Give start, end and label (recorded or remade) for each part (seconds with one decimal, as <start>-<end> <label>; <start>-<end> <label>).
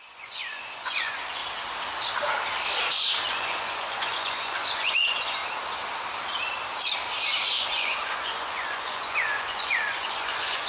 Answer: 0.0-1.4 remade; 1.4-3.3 recorded; 3.3-5.4 remade; 5.4-7.5 recorded; 7.5-10.7 remade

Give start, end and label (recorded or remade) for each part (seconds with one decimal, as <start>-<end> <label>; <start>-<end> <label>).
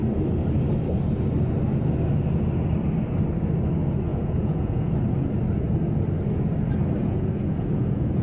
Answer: 0.0-4.1 recorded; 4.1-4.9 remade; 4.9-7.0 recorded; 7.0-8.2 remade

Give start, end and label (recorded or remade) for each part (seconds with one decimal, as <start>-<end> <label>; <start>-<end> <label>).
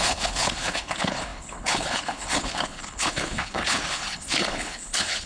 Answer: 0.0-5.3 remade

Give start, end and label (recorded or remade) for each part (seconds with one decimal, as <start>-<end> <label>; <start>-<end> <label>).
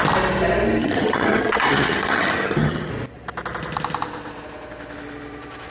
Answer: 0.0-0.8 recorded; 0.8-2.9 remade; 2.9-5.7 recorded